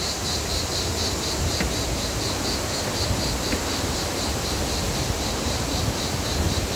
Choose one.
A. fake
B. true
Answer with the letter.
B